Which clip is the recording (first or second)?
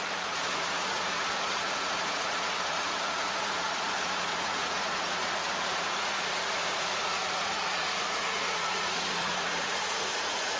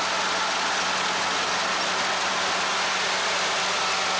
second